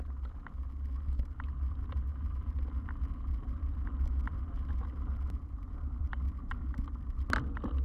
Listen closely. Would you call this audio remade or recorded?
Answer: recorded